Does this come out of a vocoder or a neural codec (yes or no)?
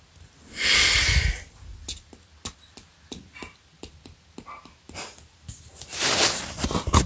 no